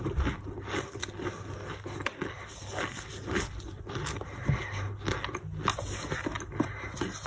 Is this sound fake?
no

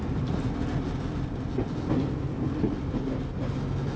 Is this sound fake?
no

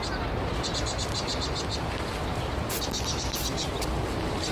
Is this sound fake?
no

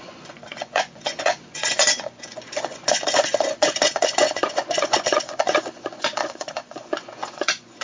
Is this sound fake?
yes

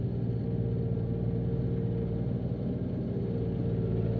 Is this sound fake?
no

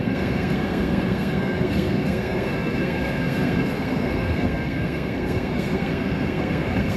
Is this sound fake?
yes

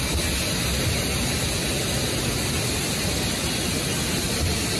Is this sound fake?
no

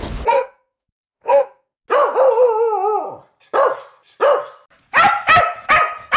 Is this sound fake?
no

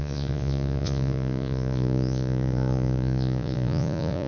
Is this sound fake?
yes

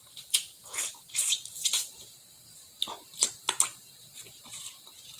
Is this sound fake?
yes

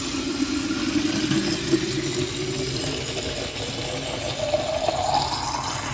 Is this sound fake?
no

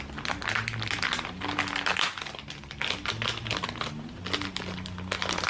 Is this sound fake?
no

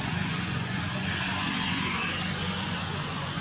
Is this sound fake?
yes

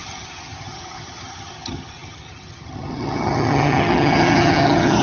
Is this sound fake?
yes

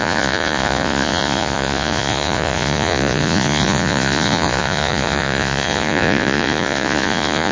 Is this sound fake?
yes